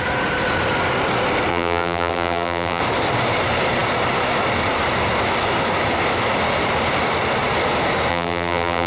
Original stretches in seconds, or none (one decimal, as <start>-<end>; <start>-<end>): 0.0-1.5; 2.8-8.1